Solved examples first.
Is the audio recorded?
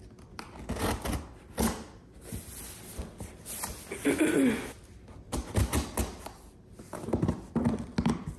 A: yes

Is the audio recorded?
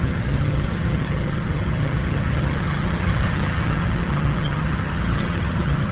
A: no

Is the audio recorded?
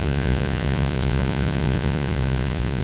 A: no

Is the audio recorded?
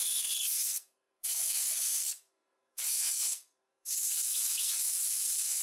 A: no